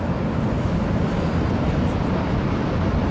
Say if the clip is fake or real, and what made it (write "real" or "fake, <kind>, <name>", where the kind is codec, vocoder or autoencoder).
real